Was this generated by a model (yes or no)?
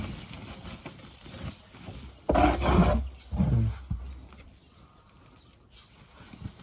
no